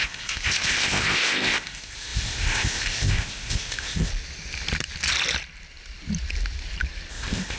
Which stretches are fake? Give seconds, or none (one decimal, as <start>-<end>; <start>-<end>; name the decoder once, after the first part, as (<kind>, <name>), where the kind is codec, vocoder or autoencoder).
0.0-4.1 (codec, ZipCodec); 7.1-7.6